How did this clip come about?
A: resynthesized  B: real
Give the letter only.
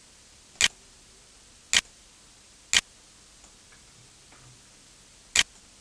B